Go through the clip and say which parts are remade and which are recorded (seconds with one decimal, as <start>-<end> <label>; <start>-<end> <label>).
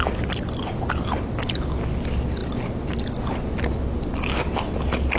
0.0-5.2 recorded